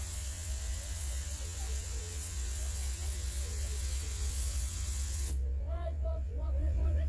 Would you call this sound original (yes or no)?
no